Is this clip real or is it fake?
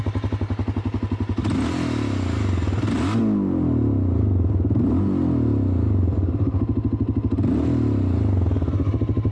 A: real